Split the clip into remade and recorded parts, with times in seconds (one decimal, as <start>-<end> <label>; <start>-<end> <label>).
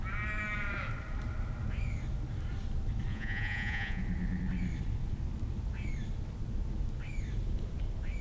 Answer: 0.0-3.1 recorded; 3.1-4.0 remade; 4.0-8.2 recorded